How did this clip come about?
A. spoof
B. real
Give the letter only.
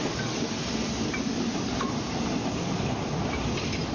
B